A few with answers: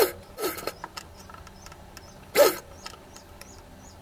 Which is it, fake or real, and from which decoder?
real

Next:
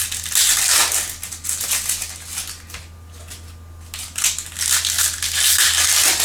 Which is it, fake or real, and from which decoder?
real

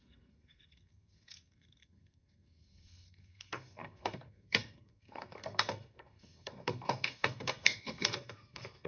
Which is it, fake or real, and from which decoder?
fake, codec, SNAC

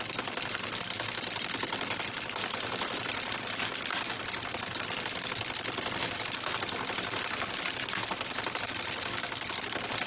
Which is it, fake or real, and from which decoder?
real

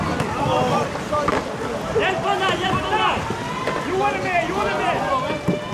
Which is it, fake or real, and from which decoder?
real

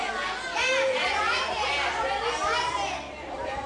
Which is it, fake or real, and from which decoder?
real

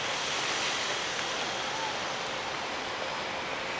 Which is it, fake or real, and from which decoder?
real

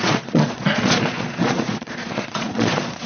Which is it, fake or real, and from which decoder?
fake, vocoder, Vocos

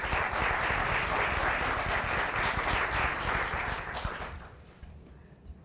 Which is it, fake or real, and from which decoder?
real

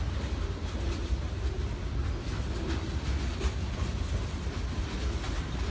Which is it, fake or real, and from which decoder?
real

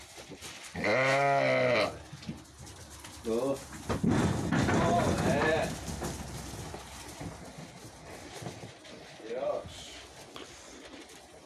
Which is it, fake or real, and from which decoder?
real